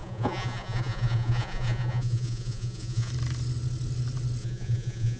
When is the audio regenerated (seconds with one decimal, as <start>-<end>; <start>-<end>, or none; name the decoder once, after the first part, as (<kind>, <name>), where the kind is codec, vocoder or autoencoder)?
0.0-3.1 (vocoder, Vocos); 4.4-5.2